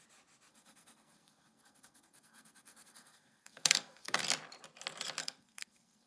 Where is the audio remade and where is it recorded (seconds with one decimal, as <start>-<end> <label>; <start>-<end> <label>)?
0.0-0.5 recorded; 0.5-4.2 remade; 4.2-5.2 recorded; 5.2-6.1 remade